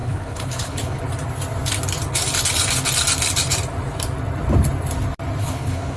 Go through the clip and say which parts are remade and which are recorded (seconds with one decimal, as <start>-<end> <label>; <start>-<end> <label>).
0.0-1.0 remade; 1.0-5.4 recorded; 5.4-6.0 remade